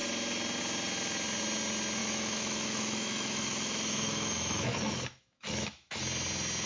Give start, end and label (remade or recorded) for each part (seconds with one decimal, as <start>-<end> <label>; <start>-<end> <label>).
0.0-2.0 recorded; 2.0-6.0 remade; 6.0-6.7 recorded